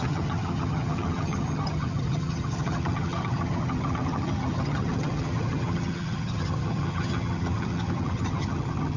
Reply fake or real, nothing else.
fake